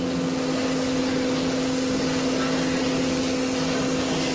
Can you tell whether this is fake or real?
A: real